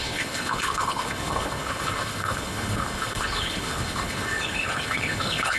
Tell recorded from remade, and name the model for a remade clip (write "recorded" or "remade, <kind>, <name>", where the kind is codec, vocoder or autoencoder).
remade, codec, HILCodec